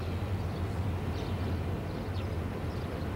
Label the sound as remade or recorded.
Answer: recorded